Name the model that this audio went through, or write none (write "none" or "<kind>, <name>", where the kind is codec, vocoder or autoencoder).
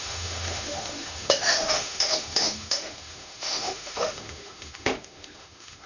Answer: autoencoder, DAC-VAE